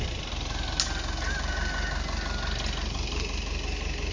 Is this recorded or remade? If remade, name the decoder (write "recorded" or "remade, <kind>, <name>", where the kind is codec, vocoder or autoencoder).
recorded